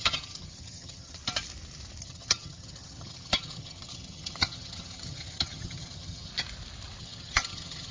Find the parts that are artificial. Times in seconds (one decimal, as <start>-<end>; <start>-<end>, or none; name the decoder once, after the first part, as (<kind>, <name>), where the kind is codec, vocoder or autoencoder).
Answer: 0.0-1.2 (vocoder, HiFi-GAN); 2.0-6.3; 7.0-7.9